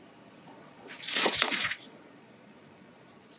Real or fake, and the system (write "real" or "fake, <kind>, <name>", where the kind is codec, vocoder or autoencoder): fake, vocoder, Vocos